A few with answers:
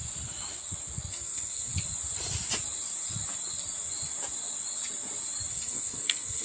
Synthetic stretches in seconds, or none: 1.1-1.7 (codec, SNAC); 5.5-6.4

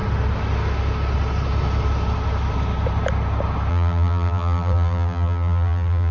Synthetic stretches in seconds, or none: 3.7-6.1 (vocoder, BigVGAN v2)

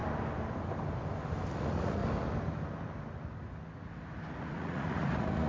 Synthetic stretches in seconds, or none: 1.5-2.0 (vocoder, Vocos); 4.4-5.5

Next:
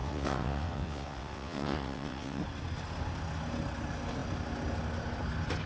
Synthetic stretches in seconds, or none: 0.0-2.4 (vocoder, WaveNeXt)

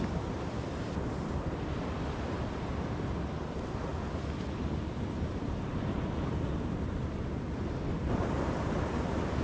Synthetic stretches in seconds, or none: 0.0-9.4 (vocoder, BigVGAN v2)

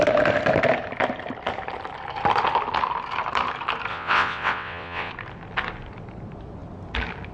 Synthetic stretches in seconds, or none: 3.9-5.1 (vocoder, WaveNeXt)

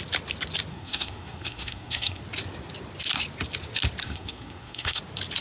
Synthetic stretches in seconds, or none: 0.7-2.2 (codec, SNAC); 4.0-5.0